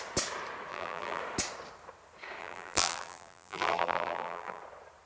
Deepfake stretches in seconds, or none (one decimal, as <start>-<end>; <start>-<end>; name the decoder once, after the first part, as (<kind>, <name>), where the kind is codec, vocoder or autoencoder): 0.7-1.2 (vocoder, BigVGAN v2); 2.4-4.6

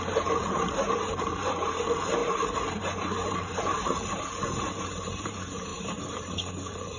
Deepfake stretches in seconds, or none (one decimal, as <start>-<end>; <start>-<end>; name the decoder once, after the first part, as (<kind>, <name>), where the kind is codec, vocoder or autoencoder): 0.0-7.0 (vocoder, BigVGAN v2)

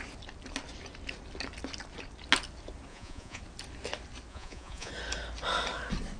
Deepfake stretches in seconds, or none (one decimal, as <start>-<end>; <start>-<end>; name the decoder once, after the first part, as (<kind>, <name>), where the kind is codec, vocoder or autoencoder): 2.9-3.4 (vocoder, Vocos); 4.3-4.9

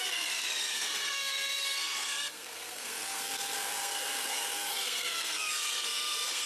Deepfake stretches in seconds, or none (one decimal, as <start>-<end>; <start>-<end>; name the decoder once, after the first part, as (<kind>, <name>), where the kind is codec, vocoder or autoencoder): 0.0-6.5 (codec, SNAC)

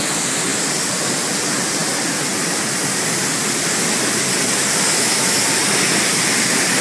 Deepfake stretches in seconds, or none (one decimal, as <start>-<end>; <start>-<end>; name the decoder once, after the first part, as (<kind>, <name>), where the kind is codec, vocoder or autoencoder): 4.9-5.4 (autoencoder, DAC-VAE)